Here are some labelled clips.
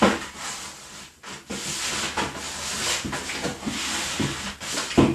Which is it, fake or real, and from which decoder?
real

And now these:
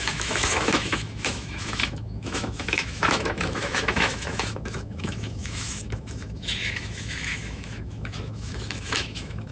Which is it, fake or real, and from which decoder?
fake, autoencoder, DAC-VAE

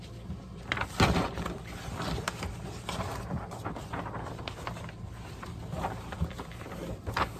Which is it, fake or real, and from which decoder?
real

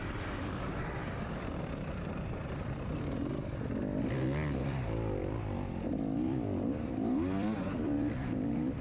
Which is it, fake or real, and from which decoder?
fake, vocoder, BigVGAN v2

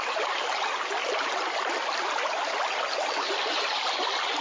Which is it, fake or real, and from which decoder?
real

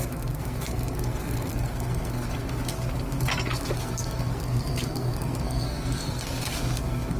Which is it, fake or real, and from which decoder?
fake, codec, SNAC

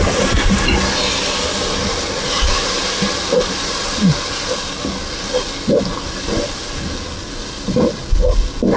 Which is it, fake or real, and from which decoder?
real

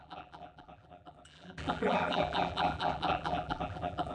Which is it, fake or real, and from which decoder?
fake, vocoder, BigVGAN v2